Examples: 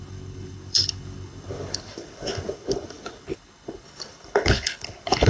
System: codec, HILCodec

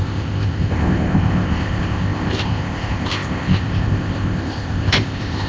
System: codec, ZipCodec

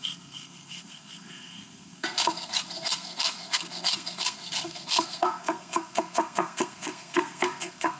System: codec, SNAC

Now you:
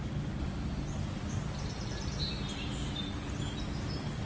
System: none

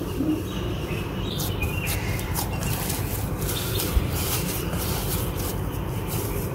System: vocoder, BigVGAN v2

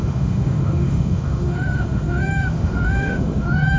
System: autoencoder, DAC-VAE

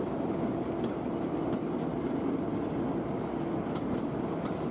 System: none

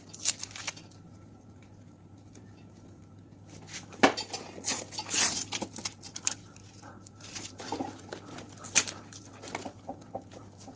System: none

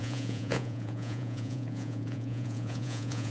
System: vocoder, Vocos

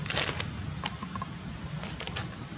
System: none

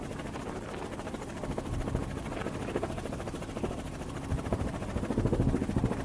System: none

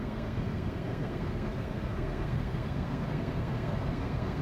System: codec, SNAC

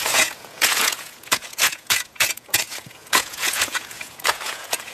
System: vocoder, Vocos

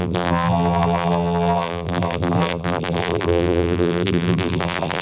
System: vocoder, BigVGAN v2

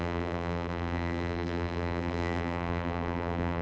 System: vocoder, BigVGAN v2